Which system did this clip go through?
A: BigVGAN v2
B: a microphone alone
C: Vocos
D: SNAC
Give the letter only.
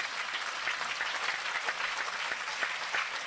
B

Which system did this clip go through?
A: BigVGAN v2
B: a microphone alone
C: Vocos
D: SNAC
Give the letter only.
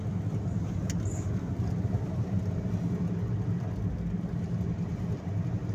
B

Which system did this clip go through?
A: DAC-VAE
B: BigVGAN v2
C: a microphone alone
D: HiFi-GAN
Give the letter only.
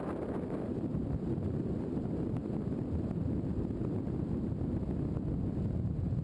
B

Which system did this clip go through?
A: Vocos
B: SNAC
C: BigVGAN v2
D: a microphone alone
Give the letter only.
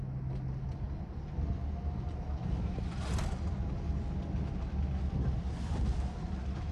D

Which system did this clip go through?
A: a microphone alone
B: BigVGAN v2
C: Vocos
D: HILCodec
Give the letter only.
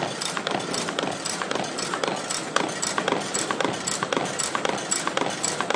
B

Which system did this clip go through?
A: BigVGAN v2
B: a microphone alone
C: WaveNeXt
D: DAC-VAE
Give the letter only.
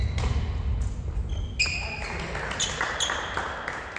B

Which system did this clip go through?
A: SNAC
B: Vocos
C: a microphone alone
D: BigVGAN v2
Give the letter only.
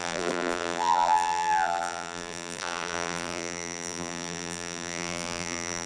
D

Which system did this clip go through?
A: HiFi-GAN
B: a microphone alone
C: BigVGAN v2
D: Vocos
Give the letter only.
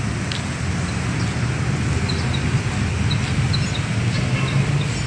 B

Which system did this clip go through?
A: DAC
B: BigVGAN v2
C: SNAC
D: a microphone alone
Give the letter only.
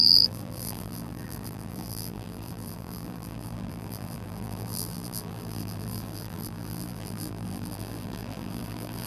B